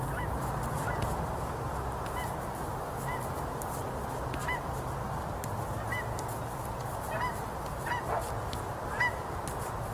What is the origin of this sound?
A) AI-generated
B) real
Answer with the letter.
B